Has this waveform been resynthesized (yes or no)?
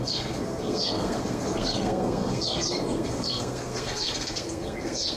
yes